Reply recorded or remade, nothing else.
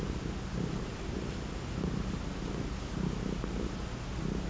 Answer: recorded